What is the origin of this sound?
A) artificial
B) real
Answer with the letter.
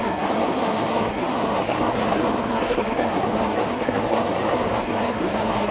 A